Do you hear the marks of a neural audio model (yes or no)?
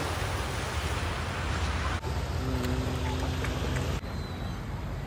no